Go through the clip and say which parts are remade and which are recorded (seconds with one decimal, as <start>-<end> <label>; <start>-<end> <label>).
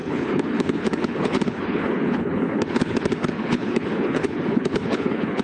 0.0-5.4 remade